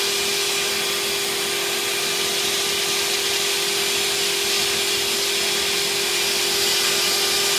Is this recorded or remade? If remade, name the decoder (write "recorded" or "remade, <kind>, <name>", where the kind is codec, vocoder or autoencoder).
recorded